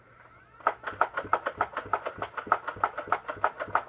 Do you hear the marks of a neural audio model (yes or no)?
no